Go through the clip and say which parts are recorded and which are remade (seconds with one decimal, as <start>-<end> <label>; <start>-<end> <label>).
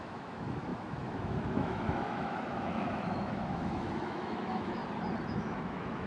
0.0-4.8 remade; 4.8-5.3 recorded; 5.3-6.1 remade